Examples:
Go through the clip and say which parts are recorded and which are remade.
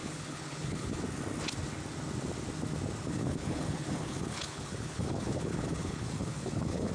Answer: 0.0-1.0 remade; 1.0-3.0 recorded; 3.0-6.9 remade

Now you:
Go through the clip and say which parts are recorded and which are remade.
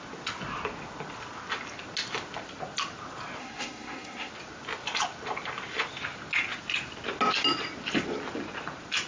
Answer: 0.0-3.4 recorded; 3.4-4.3 remade; 4.3-9.1 recorded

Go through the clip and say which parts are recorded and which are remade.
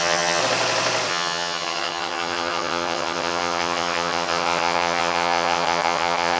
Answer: 0.0-0.4 remade; 0.4-1.1 recorded; 1.1-6.4 remade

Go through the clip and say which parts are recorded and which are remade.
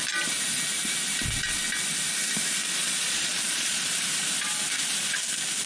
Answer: 0.0-2.8 recorded; 2.8-3.9 remade; 3.9-5.7 recorded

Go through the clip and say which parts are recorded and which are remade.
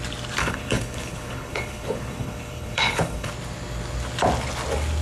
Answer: 0.0-0.4 recorded; 0.4-3.3 remade; 3.3-5.0 recorded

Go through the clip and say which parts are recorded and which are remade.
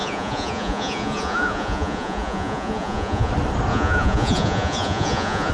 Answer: 0.0-3.3 remade; 3.3-3.7 recorded; 3.7-5.5 remade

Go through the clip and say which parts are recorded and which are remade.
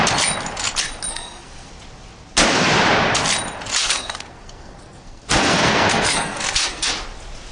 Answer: 0.0-1.1 recorded; 1.1-1.7 remade; 1.7-3.8 recorded; 3.8-6.9 remade; 6.9-7.5 recorded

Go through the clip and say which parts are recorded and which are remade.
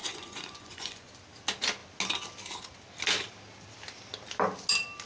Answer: 0.0-1.1 remade; 1.1-5.1 recorded